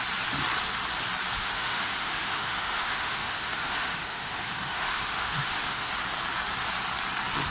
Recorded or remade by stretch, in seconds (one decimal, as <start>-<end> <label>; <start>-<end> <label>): 0.0-1.4 recorded; 1.4-5.9 remade; 5.9-7.5 recorded